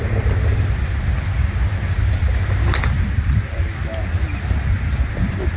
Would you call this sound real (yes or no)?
yes